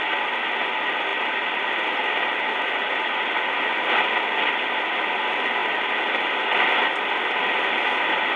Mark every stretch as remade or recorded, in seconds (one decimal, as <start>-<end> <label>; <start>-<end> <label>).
0.0-8.4 recorded